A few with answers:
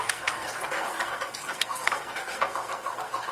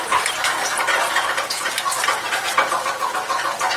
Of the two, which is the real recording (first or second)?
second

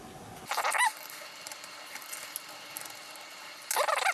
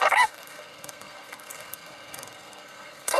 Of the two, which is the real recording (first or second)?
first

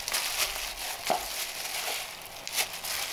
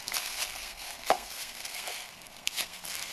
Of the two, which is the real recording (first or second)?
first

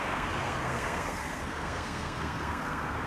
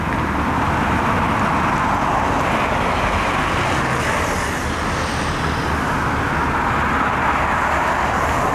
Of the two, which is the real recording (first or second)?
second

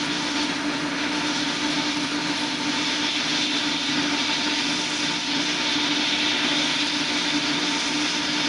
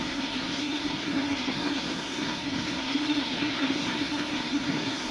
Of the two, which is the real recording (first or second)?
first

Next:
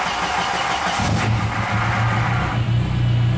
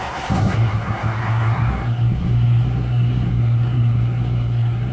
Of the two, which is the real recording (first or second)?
first